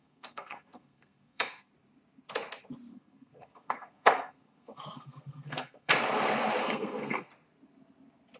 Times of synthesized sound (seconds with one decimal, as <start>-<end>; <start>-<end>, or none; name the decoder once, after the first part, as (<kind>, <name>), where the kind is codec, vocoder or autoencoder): 0.0-1.7 (codec, SNAC); 2.9-5.9; 6.6-7.3